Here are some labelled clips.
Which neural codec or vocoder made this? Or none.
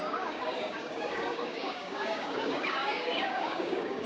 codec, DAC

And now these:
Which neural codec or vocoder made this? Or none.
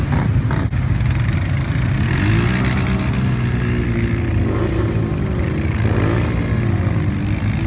none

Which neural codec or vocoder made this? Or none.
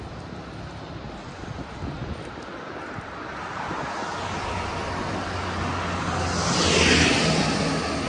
none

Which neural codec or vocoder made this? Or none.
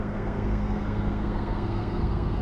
codec, SNAC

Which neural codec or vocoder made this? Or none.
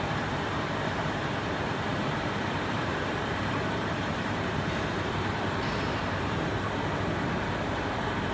vocoder, BigVGAN v2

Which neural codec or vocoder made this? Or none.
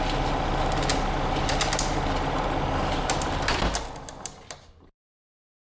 none